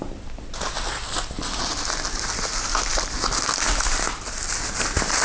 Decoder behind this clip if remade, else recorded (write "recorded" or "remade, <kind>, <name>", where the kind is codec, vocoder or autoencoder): recorded